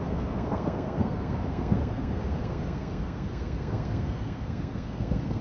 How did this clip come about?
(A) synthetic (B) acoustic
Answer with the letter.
A